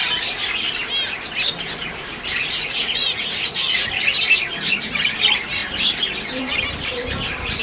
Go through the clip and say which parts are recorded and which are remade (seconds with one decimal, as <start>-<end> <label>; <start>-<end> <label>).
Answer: 0.0-2.4 recorded; 2.4-3.9 remade; 3.9-7.6 recorded